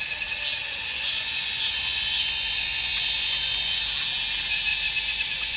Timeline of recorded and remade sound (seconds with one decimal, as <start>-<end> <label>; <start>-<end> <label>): 0.0-0.6 recorded; 0.6-3.8 remade; 3.8-4.7 recorded; 4.7-5.6 remade